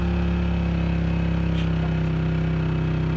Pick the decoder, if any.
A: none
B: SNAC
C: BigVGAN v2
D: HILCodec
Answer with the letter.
A